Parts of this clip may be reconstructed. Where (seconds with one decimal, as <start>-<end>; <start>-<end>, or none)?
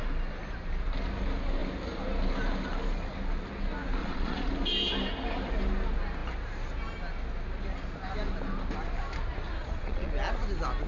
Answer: 4.0-4.5; 9.6-10.1